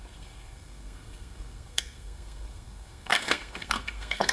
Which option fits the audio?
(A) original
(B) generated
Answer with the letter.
B